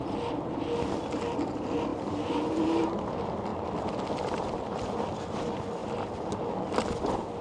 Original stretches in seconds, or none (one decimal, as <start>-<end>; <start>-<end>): 0.0-1.9; 3.0-7.4